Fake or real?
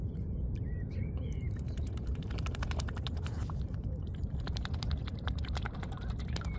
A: fake